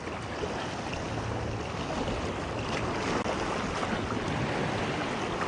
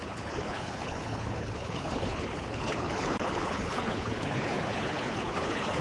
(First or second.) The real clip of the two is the first